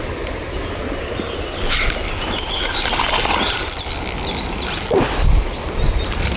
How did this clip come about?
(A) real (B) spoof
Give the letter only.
A